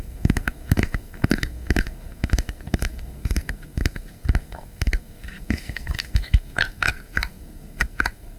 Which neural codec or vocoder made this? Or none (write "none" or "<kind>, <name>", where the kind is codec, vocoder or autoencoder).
codec, SNAC